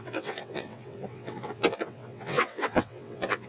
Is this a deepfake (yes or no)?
yes